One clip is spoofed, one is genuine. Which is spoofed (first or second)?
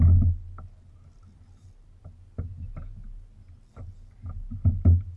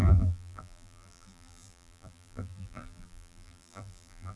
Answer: second